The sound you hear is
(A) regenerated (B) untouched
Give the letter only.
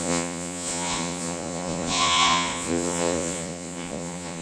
A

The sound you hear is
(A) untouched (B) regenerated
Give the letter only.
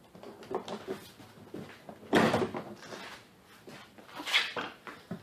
A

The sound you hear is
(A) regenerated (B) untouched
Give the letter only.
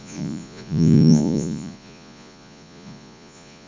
A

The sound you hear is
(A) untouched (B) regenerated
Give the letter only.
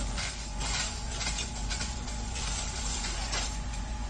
B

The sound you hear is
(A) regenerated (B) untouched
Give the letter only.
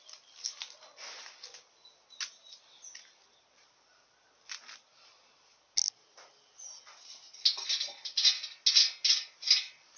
B